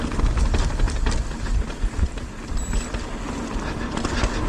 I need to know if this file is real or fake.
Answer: real